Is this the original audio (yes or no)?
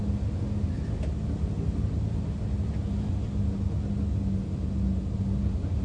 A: yes